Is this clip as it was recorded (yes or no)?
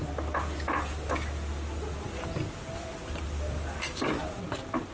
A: yes